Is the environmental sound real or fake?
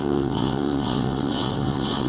fake